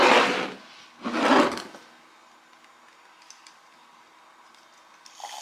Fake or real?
real